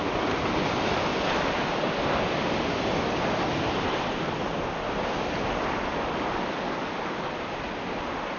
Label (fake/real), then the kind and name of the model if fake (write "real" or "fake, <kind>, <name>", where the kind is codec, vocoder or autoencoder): real